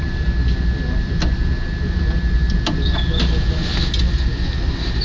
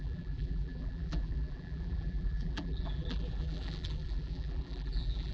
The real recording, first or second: first